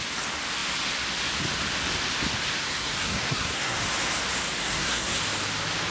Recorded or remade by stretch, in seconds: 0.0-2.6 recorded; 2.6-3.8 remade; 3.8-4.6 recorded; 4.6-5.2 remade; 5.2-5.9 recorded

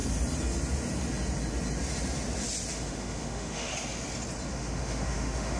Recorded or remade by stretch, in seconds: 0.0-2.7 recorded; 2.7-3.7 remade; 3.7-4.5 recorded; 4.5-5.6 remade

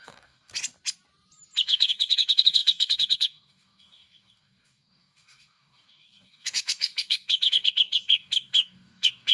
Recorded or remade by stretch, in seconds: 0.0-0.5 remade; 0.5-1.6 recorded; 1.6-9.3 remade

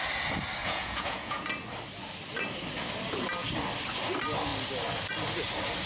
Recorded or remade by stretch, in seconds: 0.0-0.6 recorded; 0.6-1.4 remade; 1.4-5.9 recorded

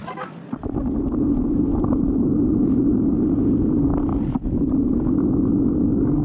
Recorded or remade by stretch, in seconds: 0.0-1.7 recorded; 1.7-3.4 remade; 3.4-6.2 recorded

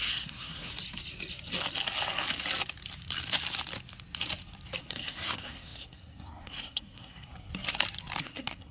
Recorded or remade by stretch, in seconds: 0.0-0.7 remade; 0.7-4.8 recorded; 4.8-7.5 remade; 7.5-8.2 recorded; 8.2-8.7 remade